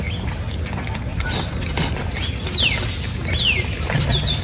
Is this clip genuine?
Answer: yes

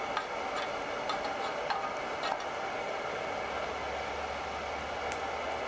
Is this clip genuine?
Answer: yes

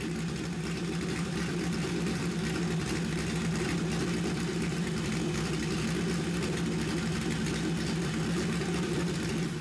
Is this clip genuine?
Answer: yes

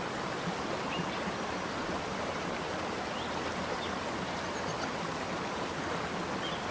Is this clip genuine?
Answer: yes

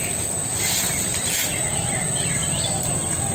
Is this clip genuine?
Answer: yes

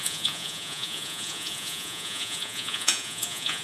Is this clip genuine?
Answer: no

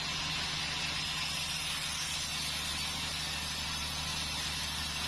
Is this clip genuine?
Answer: yes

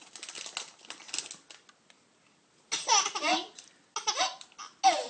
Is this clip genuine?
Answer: yes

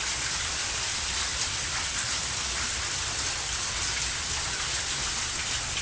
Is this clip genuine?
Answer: yes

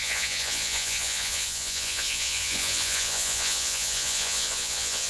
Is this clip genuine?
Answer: no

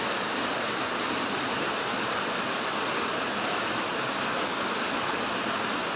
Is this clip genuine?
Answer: yes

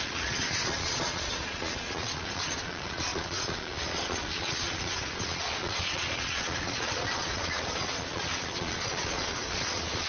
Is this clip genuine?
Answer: no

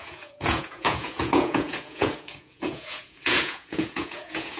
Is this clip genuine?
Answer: no